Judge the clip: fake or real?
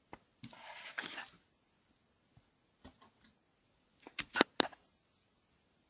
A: real